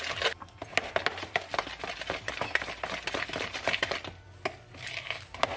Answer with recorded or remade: recorded